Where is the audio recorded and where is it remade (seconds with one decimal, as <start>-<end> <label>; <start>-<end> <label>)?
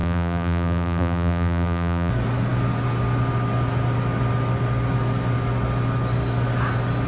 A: 0.0-2.1 remade; 2.1-7.1 recorded